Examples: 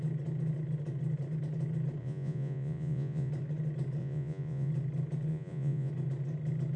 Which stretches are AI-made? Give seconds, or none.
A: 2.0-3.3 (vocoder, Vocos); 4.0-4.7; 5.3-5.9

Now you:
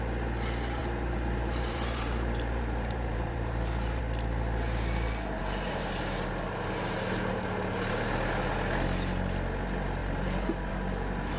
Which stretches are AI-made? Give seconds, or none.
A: 0.8-4.0 (vocoder, BigVGAN v2); 10.0-10.7

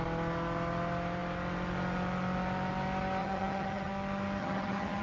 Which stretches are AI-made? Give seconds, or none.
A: 3.2-3.9 (vocoder, HiFi-GAN); 4.4-5.0

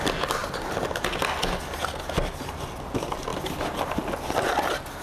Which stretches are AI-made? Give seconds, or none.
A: none

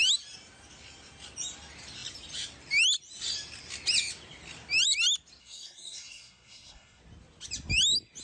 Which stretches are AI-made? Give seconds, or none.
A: 5.4-7.0 (codec, SNAC)